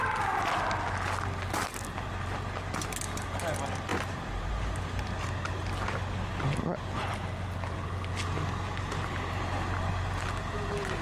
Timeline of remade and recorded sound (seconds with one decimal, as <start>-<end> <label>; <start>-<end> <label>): 0.0-3.9 recorded; 3.9-4.5 remade; 4.5-11.0 recorded